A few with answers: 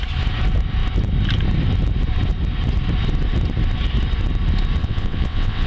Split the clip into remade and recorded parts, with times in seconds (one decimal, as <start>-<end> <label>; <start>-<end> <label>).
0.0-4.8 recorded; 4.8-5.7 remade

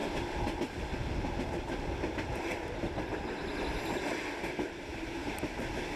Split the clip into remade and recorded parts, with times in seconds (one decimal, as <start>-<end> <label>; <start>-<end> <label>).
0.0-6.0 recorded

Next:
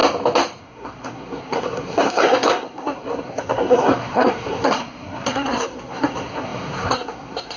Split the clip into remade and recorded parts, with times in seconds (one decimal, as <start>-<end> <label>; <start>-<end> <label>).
0.0-0.6 recorded; 0.6-7.6 remade